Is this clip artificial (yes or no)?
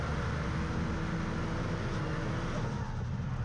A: no